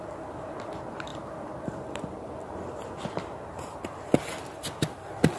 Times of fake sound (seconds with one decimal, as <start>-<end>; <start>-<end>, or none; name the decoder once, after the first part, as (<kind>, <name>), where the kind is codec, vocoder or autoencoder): none